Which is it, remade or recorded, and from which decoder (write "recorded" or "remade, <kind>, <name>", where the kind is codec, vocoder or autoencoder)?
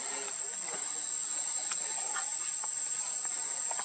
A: recorded